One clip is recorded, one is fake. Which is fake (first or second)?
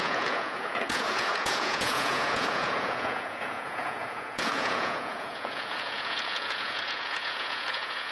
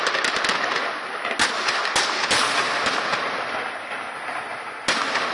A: first